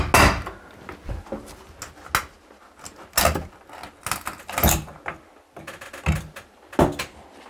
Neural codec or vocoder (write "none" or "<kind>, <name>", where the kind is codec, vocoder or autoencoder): none